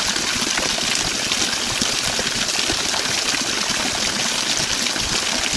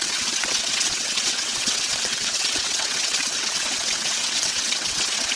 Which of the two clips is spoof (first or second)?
second